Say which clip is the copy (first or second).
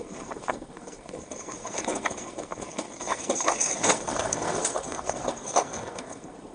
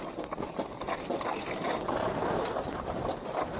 first